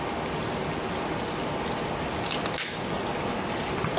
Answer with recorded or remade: recorded